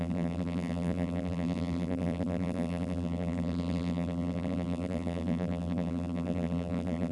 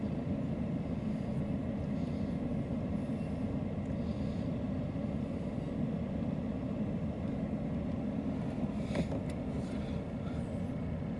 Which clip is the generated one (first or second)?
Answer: first